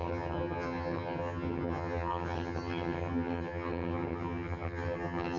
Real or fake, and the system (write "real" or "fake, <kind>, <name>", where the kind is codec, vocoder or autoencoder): fake, vocoder, HiFi-GAN